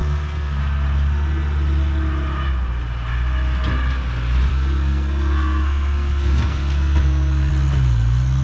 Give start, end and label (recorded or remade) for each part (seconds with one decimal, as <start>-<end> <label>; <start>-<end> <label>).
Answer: 0.0-0.6 remade; 0.6-4.5 recorded; 4.5-7.5 remade; 7.5-8.4 recorded

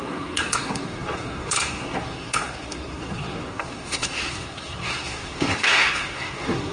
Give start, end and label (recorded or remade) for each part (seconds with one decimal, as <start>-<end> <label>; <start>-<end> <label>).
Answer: 0.0-6.7 remade

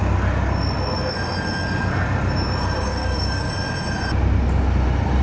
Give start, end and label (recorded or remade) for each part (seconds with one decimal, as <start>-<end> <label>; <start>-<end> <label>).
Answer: 0.0-2.9 recorded; 2.9-3.5 remade; 3.5-5.2 recorded

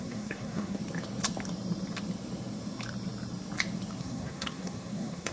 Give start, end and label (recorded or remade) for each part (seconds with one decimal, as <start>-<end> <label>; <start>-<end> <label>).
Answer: 0.0-0.8 remade; 0.8-4.0 recorded; 4.0-5.3 remade

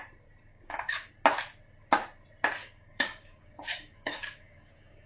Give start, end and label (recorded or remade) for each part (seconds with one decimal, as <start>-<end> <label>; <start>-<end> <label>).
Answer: 0.0-0.5 recorded; 0.5-1.1 remade; 1.1-2.6 recorded; 2.6-5.1 remade

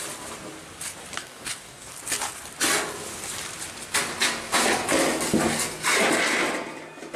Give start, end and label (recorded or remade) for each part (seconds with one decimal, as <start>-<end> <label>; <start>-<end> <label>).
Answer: 0.0-1.2 recorded; 1.2-1.9 remade; 1.9-7.2 recorded